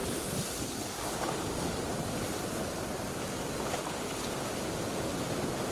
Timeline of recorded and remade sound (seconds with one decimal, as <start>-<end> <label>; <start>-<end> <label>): 0.0-5.7 recorded